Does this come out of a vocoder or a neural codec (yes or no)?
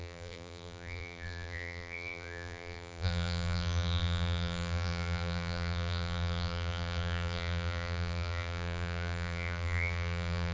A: yes